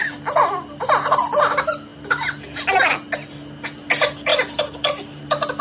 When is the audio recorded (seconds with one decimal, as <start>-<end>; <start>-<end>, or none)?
0.0-5.6